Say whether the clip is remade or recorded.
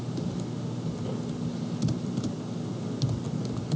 recorded